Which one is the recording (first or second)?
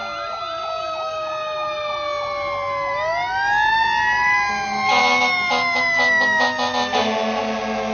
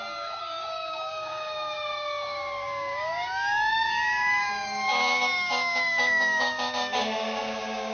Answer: first